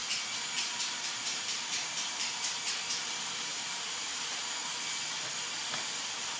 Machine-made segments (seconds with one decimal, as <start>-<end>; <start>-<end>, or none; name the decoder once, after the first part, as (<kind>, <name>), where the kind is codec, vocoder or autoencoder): 0.8-4.6 (vocoder, BigVGAN v2); 5.5-6.4